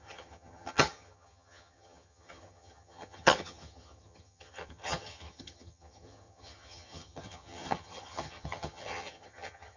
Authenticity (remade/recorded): remade